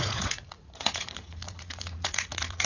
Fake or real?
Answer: fake